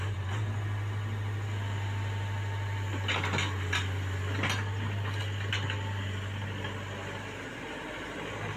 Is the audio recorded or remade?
recorded